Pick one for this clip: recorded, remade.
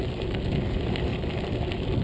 recorded